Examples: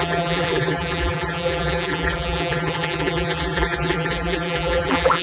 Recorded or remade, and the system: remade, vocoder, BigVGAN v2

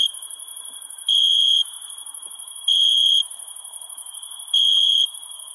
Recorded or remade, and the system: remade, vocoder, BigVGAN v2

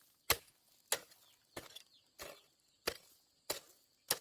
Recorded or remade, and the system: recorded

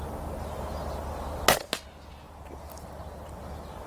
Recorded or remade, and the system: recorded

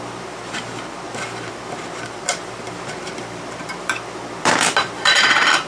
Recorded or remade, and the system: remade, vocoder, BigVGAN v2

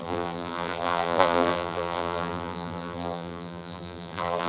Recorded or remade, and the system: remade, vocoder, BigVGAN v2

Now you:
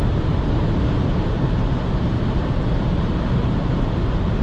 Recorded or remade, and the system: remade, vocoder, BigVGAN v2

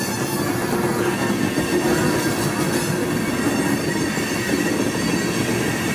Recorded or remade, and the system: recorded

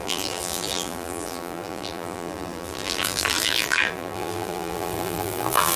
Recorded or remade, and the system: remade, vocoder, BigVGAN v2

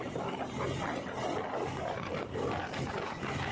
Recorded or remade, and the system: recorded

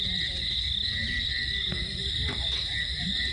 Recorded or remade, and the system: remade, vocoder, BigVGAN v2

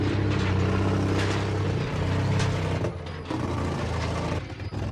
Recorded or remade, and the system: recorded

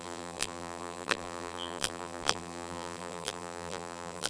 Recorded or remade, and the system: remade, vocoder, BigVGAN v2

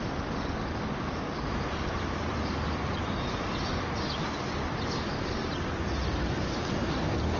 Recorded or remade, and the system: remade, vocoder, BigVGAN v2